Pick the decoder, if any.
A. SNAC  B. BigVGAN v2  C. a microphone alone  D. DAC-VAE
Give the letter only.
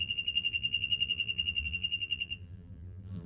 B